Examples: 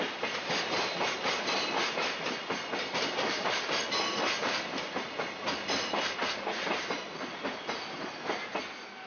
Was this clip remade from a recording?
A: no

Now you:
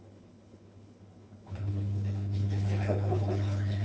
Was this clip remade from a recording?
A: yes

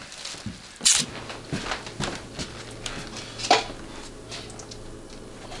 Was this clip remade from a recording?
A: no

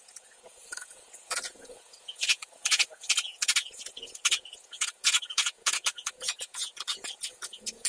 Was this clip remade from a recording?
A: yes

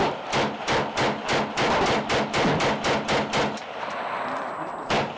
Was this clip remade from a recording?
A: no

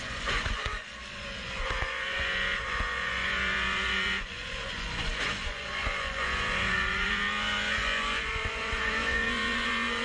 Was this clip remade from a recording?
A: yes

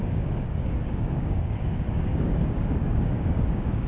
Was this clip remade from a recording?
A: yes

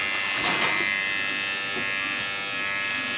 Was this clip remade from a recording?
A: no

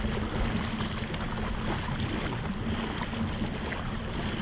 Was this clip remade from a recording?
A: no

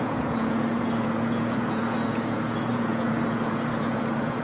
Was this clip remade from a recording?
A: yes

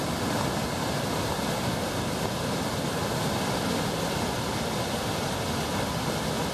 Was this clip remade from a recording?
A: no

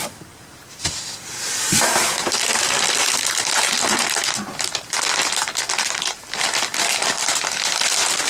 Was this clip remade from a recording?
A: no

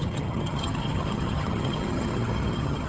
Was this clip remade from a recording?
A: yes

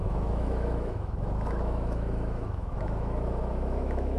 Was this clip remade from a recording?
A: yes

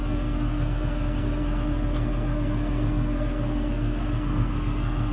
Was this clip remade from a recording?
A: yes